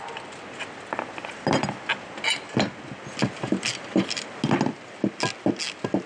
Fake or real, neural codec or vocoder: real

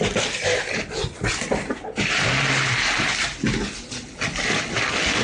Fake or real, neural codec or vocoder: real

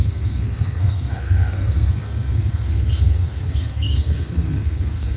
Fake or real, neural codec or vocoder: fake, codec, SNAC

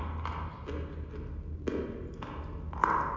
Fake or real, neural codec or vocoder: real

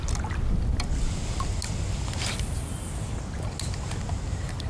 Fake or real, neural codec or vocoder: real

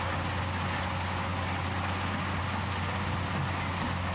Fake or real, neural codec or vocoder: real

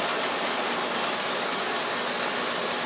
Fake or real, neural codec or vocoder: real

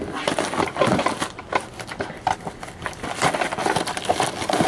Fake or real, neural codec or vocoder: real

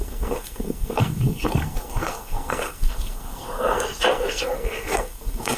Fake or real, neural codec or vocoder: fake, codec, SNAC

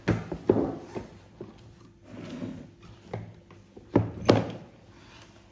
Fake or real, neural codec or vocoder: real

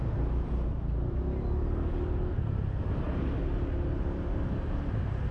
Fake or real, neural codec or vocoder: real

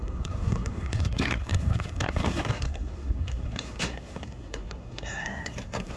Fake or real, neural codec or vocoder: fake, codec, SNAC